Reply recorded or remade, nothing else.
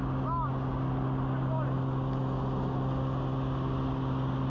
recorded